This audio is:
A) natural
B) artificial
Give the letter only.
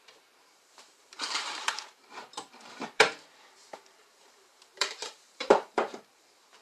B